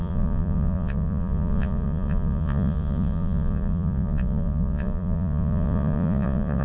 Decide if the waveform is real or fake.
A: fake